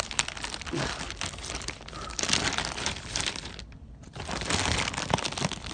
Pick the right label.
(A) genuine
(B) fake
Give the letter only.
A